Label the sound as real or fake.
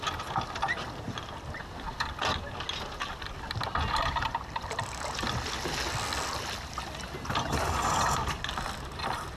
real